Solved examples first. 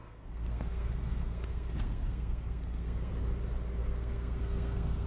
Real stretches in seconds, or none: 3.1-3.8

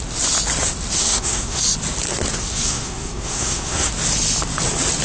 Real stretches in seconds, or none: 0.0-1.0; 1.6-2.5; 3.9-5.0

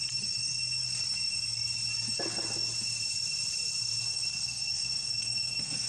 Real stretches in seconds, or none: 0.0-4.0

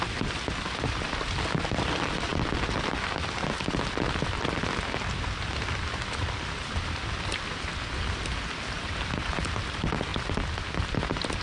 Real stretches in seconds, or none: 0.0-11.4